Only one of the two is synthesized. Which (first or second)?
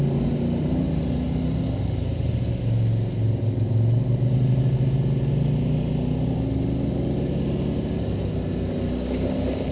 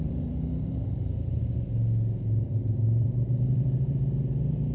second